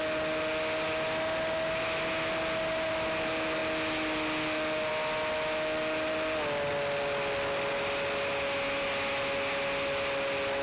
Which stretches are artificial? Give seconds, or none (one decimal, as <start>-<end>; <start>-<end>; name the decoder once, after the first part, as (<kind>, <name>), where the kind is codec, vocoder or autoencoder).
none